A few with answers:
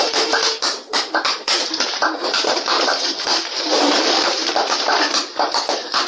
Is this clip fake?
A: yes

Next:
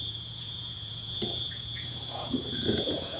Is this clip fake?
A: yes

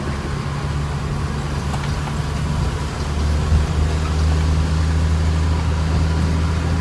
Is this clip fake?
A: no